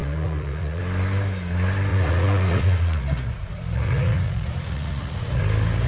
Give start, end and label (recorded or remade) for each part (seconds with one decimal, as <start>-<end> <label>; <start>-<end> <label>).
0.0-0.8 remade; 0.8-1.9 recorded; 1.9-5.4 remade; 5.4-5.9 recorded